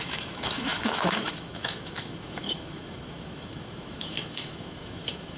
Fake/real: fake